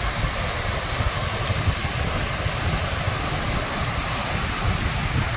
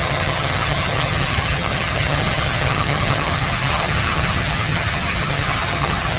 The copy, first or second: second